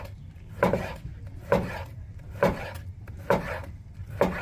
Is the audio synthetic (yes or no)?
no